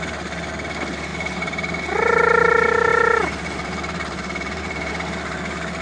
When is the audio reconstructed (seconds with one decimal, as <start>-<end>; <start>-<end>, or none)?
1.1-1.8; 2.9-4.9